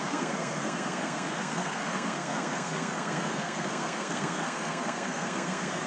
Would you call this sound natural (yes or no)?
no